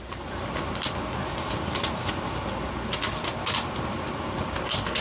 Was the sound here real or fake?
real